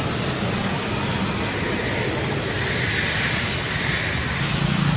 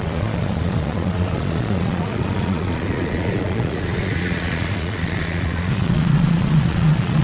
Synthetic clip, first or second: second